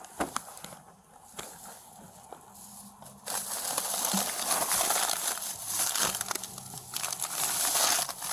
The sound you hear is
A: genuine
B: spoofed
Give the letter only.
A